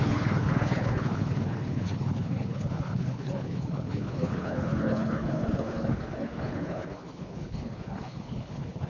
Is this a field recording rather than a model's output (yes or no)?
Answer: no